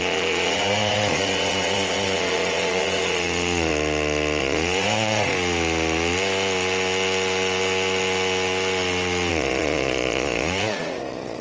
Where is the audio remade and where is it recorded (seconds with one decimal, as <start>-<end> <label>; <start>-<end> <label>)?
0.0-3.7 remade; 3.7-4.4 recorded; 4.4-5.3 remade; 5.3-9.3 recorded; 9.3-11.4 remade